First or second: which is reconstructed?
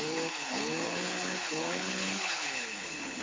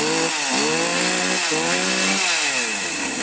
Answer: first